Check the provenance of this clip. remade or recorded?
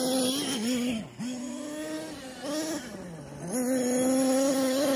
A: recorded